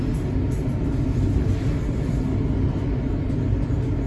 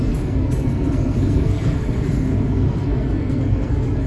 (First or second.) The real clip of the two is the first